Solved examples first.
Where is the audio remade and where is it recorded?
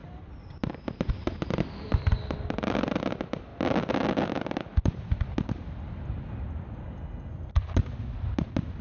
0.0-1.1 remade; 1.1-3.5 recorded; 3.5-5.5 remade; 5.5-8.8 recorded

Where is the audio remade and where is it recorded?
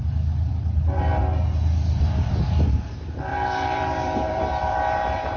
0.0-0.5 recorded; 0.5-1.0 remade; 1.0-3.3 recorded; 3.3-5.4 remade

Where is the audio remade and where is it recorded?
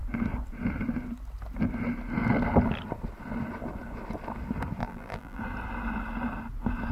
0.0-4.8 recorded; 4.8-5.4 remade; 5.4-6.9 recorded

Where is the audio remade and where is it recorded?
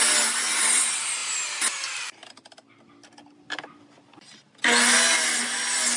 0.0-6.0 recorded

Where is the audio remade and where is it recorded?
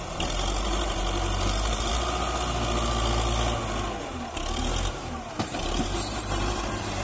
0.0-1.9 remade; 1.9-4.5 recorded; 4.5-7.0 remade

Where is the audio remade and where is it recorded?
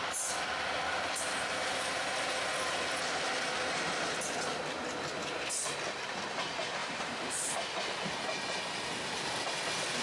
0.0-6.8 recorded; 6.8-7.5 remade; 7.5-10.0 recorded